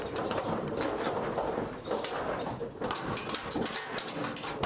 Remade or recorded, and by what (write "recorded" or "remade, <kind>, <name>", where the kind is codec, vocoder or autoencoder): recorded